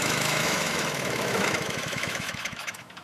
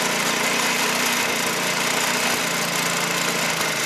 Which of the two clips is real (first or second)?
second